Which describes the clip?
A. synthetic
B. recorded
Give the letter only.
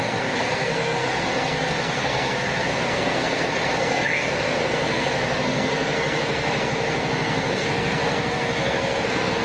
A